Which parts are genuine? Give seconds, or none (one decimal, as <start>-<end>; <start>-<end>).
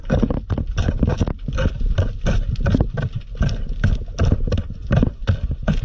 0.0-5.8